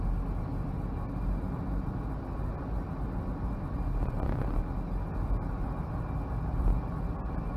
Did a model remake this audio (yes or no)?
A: no